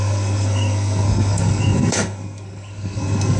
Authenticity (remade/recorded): remade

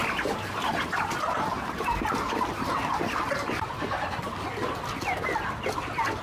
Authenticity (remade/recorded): recorded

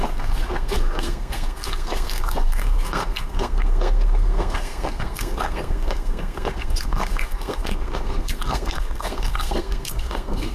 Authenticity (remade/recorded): remade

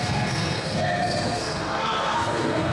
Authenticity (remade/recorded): remade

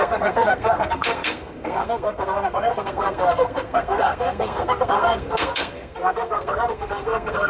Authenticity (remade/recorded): remade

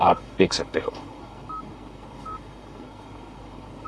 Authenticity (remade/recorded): remade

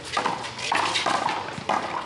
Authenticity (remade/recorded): recorded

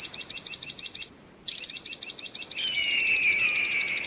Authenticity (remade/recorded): recorded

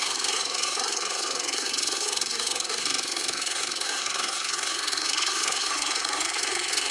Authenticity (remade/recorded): remade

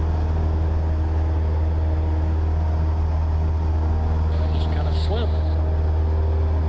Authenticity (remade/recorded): recorded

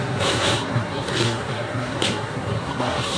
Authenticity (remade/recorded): remade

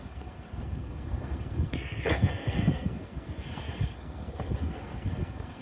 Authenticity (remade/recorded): remade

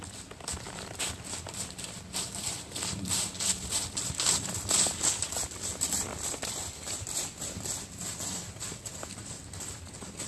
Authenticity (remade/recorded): recorded